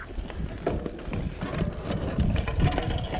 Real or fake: real